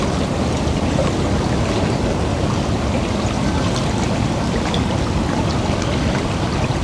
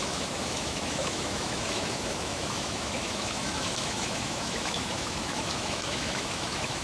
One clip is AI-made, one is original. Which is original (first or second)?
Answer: first